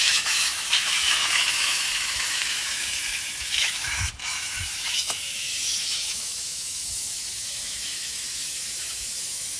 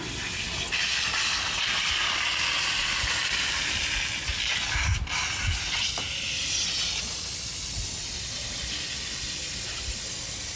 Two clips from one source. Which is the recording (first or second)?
second